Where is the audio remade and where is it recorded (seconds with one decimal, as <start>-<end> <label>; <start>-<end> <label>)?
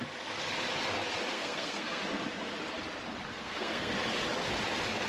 0.0-1.3 recorded; 1.3-2.0 remade; 2.0-3.3 recorded; 3.3-3.9 remade; 3.9-5.1 recorded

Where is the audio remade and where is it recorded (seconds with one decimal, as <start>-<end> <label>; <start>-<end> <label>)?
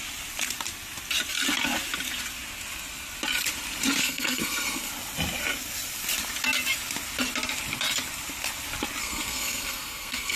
0.0-4.0 recorded; 4.0-4.9 remade; 4.9-9.0 recorded; 9.0-10.4 remade